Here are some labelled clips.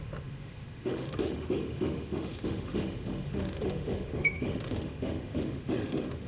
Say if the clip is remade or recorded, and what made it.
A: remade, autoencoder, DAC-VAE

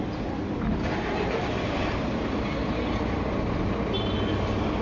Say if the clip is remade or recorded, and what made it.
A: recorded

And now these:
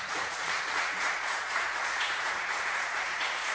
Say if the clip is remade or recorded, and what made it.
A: remade, vocoder, Vocos